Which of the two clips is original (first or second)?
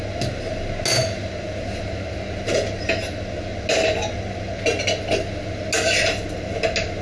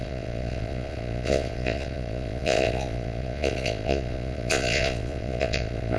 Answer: first